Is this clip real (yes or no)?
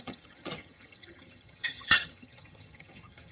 no